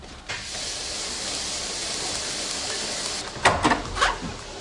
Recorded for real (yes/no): yes